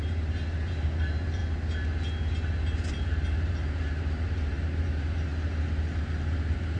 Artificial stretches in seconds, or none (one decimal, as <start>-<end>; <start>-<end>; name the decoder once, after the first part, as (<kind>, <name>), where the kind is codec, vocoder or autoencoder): 0.0-1.4 (vocoder, BigVGAN v2); 2.9-5.3; 6.0-6.8